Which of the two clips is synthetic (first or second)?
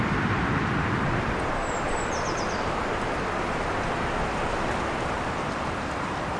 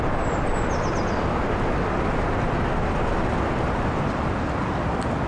first